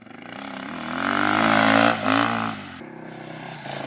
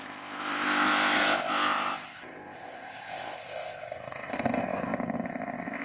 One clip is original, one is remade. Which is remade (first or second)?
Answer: second